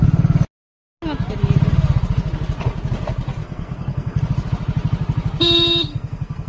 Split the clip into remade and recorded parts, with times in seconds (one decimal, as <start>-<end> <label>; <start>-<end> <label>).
0.0-3.4 recorded; 3.4-4.2 remade; 4.2-5.9 recorded; 5.9-6.5 remade